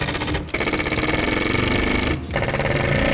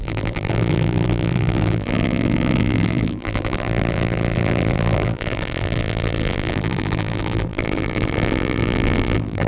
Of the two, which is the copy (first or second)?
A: second